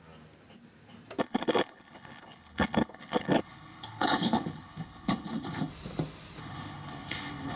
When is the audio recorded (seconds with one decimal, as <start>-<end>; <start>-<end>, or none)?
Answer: 0.0-1.2; 5.7-6.4